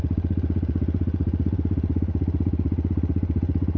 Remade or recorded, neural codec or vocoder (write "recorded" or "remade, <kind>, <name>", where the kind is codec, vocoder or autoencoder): remade, vocoder, Vocos